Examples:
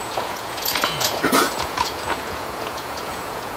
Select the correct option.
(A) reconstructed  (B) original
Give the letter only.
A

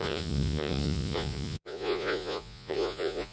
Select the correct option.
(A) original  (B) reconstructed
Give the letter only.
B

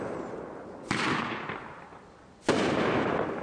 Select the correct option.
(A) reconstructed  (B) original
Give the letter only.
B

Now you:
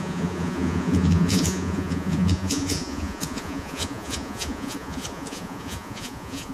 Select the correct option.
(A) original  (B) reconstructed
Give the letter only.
B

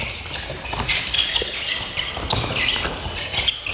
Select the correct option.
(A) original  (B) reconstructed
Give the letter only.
A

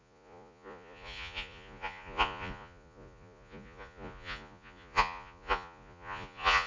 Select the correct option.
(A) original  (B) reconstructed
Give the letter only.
B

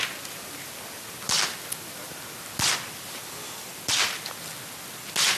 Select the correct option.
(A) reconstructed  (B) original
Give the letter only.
B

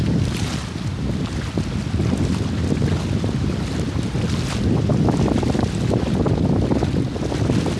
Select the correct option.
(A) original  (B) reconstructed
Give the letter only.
A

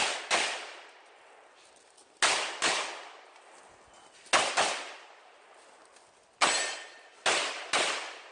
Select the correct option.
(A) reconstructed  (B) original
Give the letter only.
B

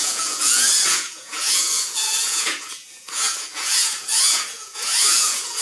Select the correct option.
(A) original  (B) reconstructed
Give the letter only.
B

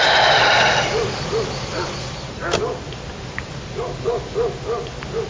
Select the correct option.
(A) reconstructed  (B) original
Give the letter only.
B